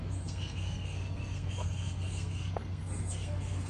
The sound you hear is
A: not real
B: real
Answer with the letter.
A